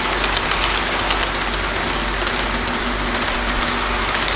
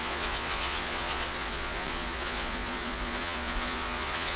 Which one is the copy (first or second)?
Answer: second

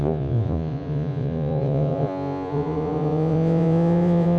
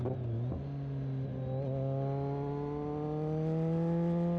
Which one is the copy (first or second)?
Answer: first